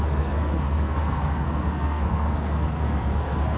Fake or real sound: fake